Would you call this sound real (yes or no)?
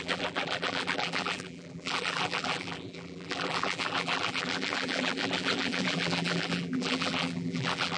no